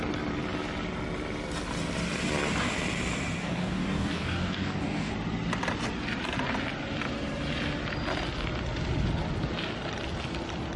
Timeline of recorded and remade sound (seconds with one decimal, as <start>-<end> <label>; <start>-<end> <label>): 0.0-3.4 recorded; 3.4-5.1 remade; 5.1-10.8 recorded